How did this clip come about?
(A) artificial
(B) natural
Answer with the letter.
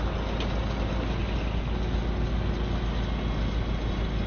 B